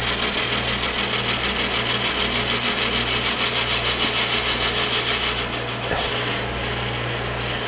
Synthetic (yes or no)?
no